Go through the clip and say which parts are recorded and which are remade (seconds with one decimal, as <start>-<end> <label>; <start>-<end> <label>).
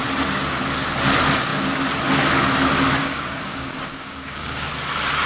0.0-3.0 recorded; 3.0-4.7 remade; 4.7-5.3 recorded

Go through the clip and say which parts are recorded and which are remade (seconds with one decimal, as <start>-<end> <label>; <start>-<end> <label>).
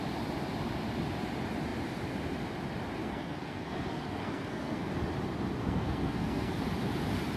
0.0-3.0 recorded; 3.0-4.9 remade; 4.9-5.6 recorded; 5.6-6.6 remade; 6.6-7.4 recorded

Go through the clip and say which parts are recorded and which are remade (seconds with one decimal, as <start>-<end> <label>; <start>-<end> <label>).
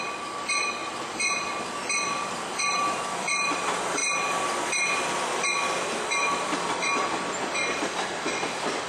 0.0-4.0 remade; 4.0-6.0 recorded; 6.0-8.9 remade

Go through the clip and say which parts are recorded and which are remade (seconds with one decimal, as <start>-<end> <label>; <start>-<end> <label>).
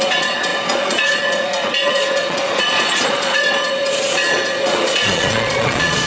0.0-6.1 remade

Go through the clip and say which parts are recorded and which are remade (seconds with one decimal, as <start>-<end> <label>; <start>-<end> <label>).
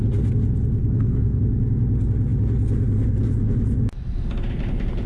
0.0-0.8 recorded; 0.8-1.4 remade; 1.4-5.1 recorded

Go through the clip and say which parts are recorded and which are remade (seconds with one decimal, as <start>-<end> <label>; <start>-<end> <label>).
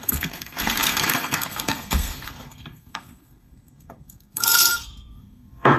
0.0-5.8 remade